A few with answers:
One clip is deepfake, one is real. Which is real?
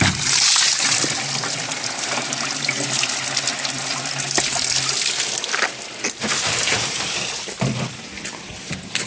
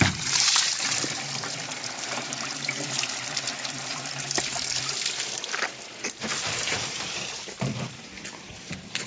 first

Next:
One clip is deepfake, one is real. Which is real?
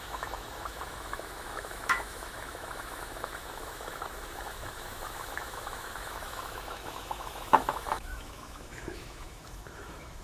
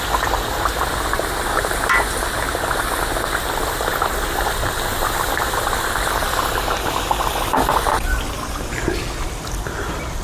second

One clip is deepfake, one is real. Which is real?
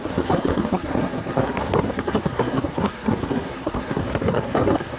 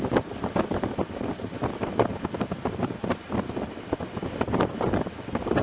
second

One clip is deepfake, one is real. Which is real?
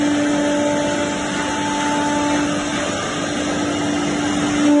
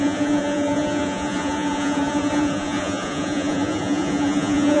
first